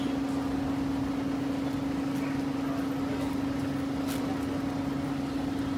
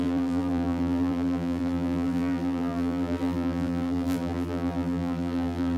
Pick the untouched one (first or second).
first